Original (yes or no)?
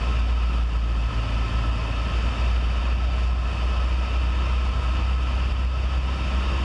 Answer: yes